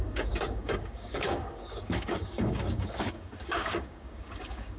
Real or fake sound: fake